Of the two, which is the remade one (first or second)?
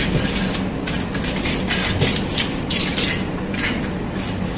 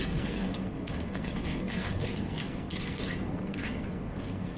second